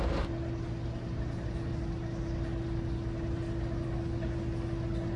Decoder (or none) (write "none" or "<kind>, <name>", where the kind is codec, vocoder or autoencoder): none